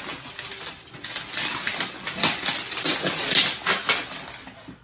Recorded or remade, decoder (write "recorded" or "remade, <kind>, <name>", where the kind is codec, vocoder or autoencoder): recorded